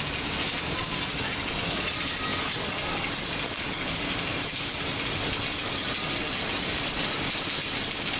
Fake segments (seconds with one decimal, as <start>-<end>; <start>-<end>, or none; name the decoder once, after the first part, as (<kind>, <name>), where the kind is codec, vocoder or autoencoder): none